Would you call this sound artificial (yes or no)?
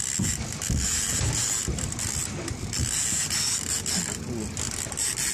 yes